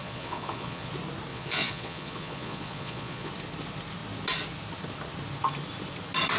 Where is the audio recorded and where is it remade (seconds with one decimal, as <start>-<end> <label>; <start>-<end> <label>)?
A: 0.0-0.9 remade; 0.9-1.3 recorded; 1.3-3.3 remade; 3.3-6.4 recorded